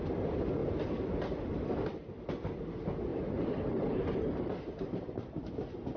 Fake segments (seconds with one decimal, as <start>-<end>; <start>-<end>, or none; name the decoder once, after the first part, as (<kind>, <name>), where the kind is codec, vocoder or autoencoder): 3.1-5.5 (vocoder, BigVGAN v2)

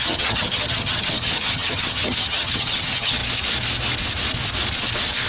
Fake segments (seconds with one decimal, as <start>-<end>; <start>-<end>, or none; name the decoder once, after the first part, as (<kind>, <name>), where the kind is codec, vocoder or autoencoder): 0.0-3.2 (vocoder, HiFi-GAN)

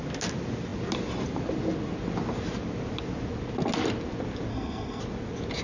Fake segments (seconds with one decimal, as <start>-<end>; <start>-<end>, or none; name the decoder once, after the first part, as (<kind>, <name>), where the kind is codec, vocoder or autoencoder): 4.5-5.0 (codec, SNAC)